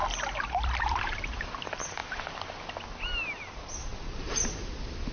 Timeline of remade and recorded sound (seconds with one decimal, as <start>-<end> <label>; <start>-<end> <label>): 0.0-0.8 recorded; 0.8-2.0 remade; 2.0-3.5 recorded; 3.5-5.1 remade